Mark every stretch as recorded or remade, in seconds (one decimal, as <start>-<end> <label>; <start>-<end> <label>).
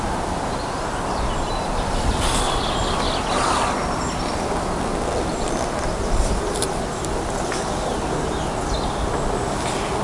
0.0-10.0 recorded